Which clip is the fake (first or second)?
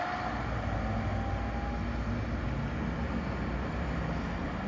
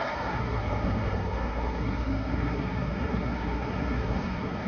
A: second